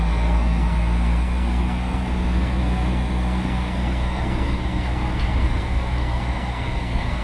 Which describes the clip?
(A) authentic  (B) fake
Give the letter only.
B